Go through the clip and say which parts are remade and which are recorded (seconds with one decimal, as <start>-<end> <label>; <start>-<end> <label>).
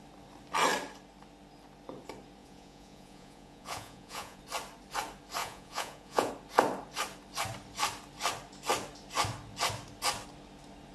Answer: 0.0-2.4 recorded; 2.4-4.4 remade; 4.4-5.4 recorded; 5.4-6.3 remade; 6.3-10.9 recorded